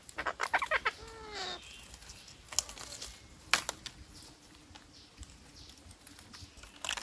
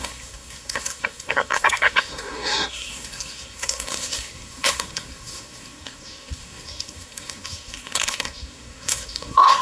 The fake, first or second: second